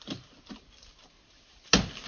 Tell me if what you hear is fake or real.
real